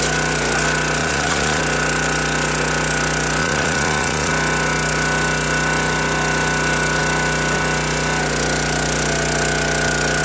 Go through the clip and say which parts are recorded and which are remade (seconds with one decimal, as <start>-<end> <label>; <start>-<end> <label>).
0.0-1.0 recorded; 1.0-1.6 remade; 1.6-3.4 recorded; 3.4-4.3 remade; 4.3-10.2 recorded